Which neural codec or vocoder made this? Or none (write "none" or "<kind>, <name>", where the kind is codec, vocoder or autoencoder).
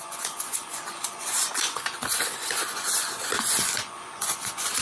vocoder, Vocos